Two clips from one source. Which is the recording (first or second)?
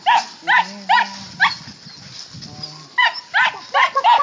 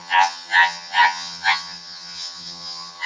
first